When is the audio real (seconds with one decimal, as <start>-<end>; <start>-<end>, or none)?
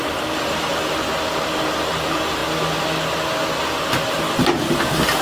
2.4-4.3